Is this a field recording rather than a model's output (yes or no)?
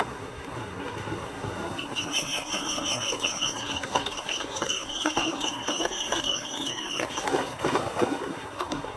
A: no